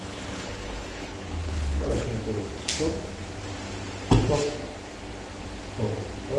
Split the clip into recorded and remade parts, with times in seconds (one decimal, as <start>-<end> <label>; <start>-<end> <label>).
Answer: 0.0-2.1 remade; 2.1-6.4 recorded

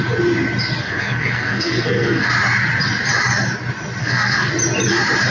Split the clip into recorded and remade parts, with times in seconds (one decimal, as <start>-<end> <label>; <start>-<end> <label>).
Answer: 0.0-0.8 recorded; 0.8-2.3 remade; 2.3-4.0 recorded; 4.0-4.5 remade; 4.5-5.3 recorded

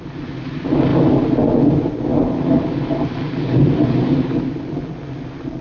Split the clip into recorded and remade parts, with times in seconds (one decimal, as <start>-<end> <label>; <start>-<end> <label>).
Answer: 0.0-5.6 recorded

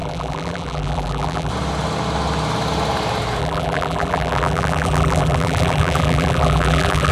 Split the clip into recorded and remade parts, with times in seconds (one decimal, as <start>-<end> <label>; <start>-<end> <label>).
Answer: 0.0-1.5 remade; 1.5-3.4 recorded; 3.4-7.1 remade

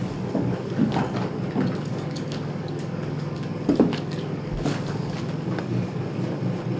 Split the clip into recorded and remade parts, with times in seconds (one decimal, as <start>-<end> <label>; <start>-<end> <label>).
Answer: 0.0-1.0 remade; 1.0-1.9 recorded; 1.9-6.0 remade; 6.0-6.8 recorded

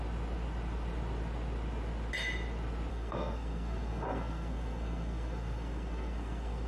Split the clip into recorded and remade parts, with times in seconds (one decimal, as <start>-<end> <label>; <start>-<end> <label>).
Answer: 0.0-2.9 recorded; 2.9-6.7 remade